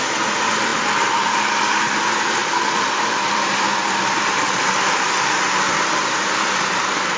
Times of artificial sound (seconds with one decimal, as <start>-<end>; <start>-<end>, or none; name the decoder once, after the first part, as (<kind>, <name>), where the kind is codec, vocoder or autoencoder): 2.4-4.5 (vocoder, BigVGAN v2)